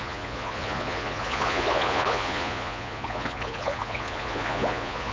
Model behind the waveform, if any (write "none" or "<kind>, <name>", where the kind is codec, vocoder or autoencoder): vocoder, Vocos